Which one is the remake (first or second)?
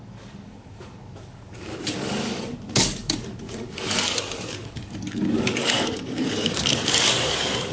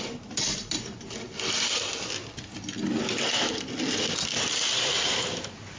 first